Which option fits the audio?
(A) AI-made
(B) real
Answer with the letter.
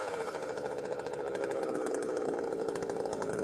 A